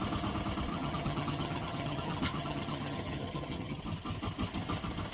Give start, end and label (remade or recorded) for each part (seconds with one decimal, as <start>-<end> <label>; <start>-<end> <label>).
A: 0.0-0.7 recorded; 0.7-3.8 remade; 3.8-5.1 recorded